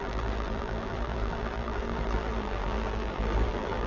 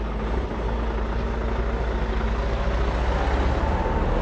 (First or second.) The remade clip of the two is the first